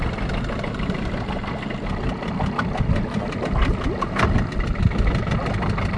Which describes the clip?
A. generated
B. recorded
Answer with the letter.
B